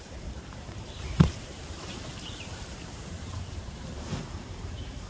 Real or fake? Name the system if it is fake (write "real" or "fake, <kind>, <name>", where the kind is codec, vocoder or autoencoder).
fake, vocoder, BigVGAN v2